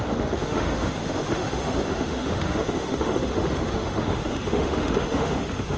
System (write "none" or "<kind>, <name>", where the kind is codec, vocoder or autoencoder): autoencoder, DAC-VAE